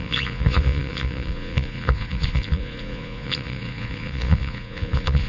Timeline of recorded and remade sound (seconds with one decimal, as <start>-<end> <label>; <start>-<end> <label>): 0.0-5.3 remade